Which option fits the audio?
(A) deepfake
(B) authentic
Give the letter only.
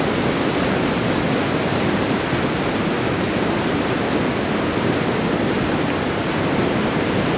B